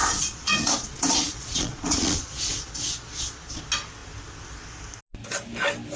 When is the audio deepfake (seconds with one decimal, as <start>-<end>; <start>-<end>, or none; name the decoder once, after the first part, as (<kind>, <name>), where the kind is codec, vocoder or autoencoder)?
0.0-3.6 (vocoder, Vocos)